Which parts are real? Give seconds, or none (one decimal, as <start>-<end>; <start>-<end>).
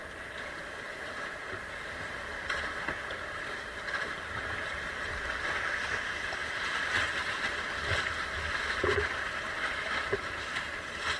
0.0-11.2